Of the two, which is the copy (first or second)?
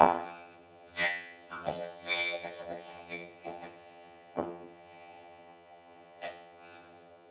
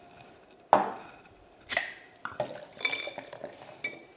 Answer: first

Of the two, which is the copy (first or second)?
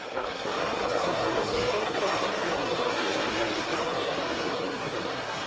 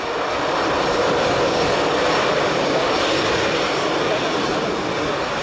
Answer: first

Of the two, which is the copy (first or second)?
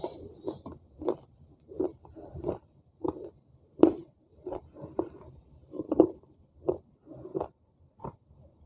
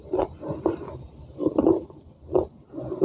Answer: first